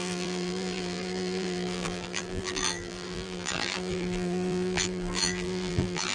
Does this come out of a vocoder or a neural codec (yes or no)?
yes